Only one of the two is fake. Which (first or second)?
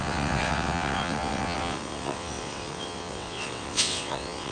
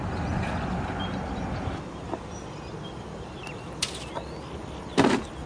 first